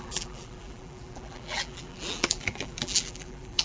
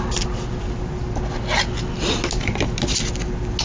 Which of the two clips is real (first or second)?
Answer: second